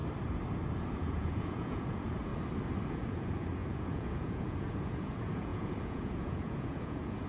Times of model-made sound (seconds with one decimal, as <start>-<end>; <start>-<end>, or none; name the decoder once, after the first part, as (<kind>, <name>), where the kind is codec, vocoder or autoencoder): 0.9-2.3 (vocoder, Vocos); 2.9-7.3